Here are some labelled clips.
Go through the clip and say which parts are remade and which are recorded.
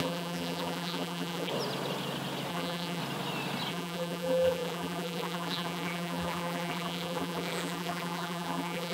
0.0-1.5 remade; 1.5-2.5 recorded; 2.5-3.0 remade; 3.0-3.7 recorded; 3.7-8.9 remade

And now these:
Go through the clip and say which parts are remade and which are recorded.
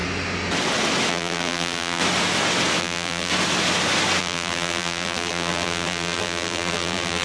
0.0-1.1 recorded; 1.1-2.0 remade; 2.0-2.8 recorded; 2.8-3.3 remade; 3.3-4.2 recorded; 4.2-7.2 remade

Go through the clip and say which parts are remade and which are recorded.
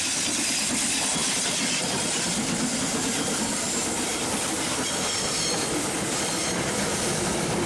0.0-7.7 recorded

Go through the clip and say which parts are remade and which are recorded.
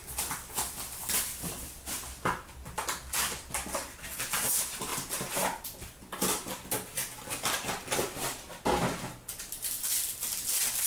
0.0-1.0 recorded; 1.0-2.0 remade; 2.0-10.9 recorded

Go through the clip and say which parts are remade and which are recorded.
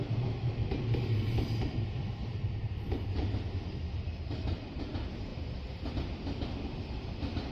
0.0-2.2 recorded; 2.2-4.8 remade; 4.8-5.3 recorded; 5.3-5.9 remade; 5.9-7.5 recorded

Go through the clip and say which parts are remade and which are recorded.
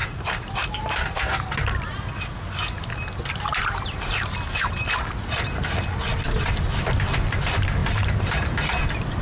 0.0-7.8 recorded; 7.8-8.5 remade; 8.5-9.2 recorded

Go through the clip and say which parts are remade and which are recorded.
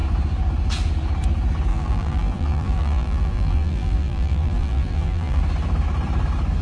0.0-1.7 recorded; 1.7-5.4 remade; 5.4-6.6 recorded